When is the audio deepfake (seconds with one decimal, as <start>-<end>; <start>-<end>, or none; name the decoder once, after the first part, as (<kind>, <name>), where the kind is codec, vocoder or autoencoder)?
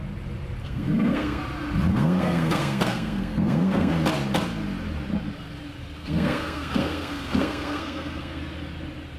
0.6-1.4 (codec, SNAC); 1.9-3.9; 6.0-8.4